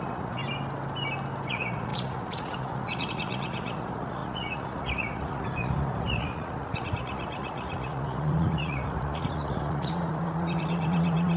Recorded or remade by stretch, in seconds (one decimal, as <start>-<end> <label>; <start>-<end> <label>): 0.0-0.4 remade; 0.4-1.5 recorded; 1.5-11.4 remade